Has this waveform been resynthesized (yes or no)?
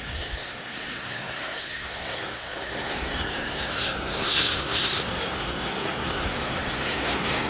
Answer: yes